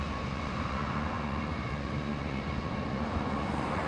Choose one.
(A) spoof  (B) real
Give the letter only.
A